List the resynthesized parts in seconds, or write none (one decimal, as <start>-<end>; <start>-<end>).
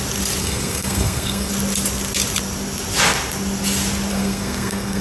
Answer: 0.4-1.5; 4.1-5.0